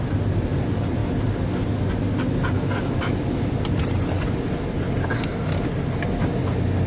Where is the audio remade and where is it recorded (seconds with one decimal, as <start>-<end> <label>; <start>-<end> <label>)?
0.0-6.9 recorded